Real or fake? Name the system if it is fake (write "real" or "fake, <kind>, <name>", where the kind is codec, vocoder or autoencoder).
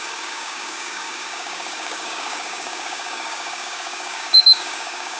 fake, codec, DAC